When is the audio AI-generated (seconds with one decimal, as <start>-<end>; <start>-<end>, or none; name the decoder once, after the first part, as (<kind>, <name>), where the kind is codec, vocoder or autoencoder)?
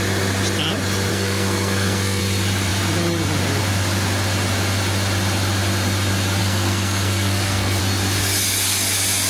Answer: 1.1-2.2 (codec, SNAC); 6.4-7.8